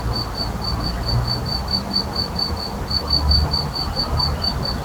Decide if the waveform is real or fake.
real